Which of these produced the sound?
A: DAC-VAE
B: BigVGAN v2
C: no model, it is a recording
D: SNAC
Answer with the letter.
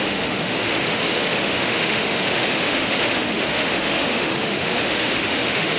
A